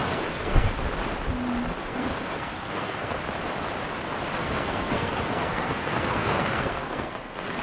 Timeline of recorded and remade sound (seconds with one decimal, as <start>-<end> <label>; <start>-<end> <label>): 0.0-0.7 remade; 0.7-1.8 recorded; 1.8-3.2 remade; 3.2-4.4 recorded; 4.4-7.6 remade